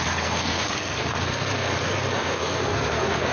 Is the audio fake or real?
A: fake